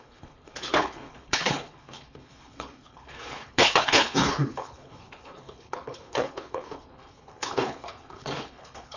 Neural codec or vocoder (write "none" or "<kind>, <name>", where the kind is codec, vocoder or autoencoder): codec, HILCodec